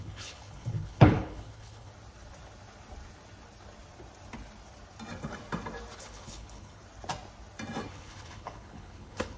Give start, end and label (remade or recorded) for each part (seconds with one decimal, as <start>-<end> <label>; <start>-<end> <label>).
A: 0.0-1.9 remade; 1.9-6.0 recorded; 6.0-6.8 remade; 6.8-7.9 recorded; 7.9-9.4 remade